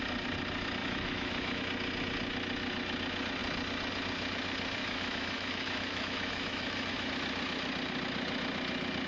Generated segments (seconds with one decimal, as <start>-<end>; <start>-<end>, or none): 0.8-1.6; 4.8-7.1